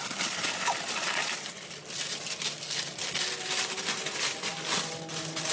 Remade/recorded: recorded